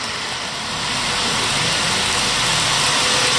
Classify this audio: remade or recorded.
recorded